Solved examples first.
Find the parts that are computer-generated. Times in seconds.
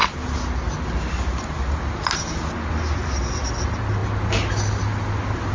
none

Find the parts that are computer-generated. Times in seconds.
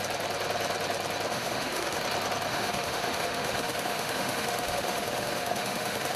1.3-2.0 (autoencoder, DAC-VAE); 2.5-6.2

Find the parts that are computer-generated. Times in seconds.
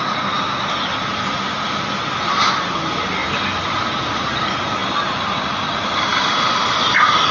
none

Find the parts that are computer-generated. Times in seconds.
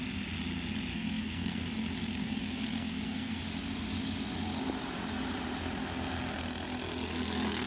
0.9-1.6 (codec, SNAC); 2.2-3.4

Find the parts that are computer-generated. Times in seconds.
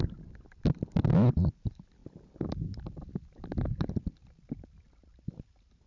none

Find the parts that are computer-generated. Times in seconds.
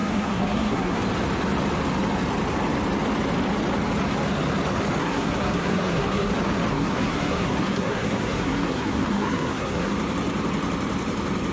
0.0-1.0 (codec, SNAC); 5.0-6.3; 6.7-9.9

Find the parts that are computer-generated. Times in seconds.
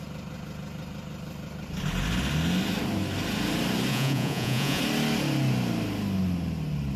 3.9-4.8 (vocoder, Vocos)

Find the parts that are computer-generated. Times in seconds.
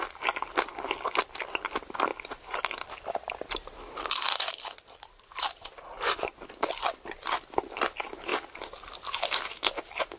0.0-0.7 (vocoder, BigVGAN v2); 1.2-2.1; 4.5-8.3